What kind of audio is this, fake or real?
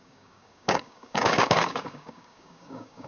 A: fake